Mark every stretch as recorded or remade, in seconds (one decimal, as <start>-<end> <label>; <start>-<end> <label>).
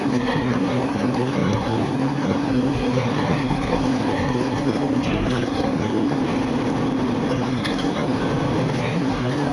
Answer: 0.0-6.2 remade; 6.2-7.3 recorded; 7.3-8.2 remade; 8.2-8.8 recorded; 8.8-9.5 remade